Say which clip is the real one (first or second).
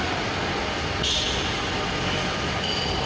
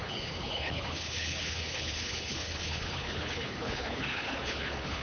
first